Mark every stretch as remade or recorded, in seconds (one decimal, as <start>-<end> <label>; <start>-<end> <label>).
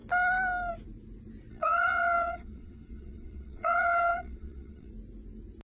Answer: 0.0-1.5 recorded; 1.5-4.9 remade; 4.9-5.6 recorded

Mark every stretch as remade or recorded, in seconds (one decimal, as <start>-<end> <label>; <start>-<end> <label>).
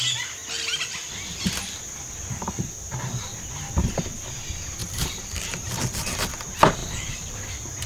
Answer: 0.0-4.8 recorded; 4.8-5.8 remade; 5.8-6.8 recorded; 6.8-7.5 remade; 7.5-7.9 recorded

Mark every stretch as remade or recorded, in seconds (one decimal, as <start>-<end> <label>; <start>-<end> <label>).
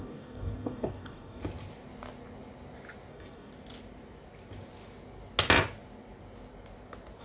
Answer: 0.0-1.4 remade; 1.4-3.1 recorded; 3.1-3.5 remade; 3.5-7.2 recorded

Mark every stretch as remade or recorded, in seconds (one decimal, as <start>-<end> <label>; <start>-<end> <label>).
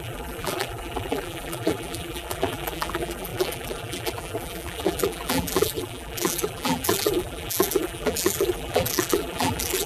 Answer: 0.0-9.9 remade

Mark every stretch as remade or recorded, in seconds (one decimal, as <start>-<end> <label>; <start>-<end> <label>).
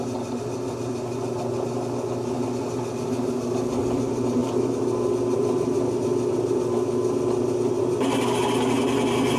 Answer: 0.0-9.4 recorded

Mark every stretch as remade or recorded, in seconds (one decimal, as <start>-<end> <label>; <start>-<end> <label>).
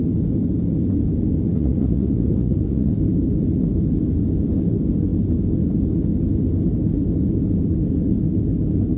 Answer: 0.0-1.5 recorded; 1.5-2.9 remade; 2.9-9.0 recorded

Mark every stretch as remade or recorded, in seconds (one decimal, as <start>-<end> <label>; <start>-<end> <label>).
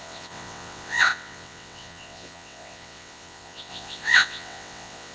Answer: 0.0-5.1 remade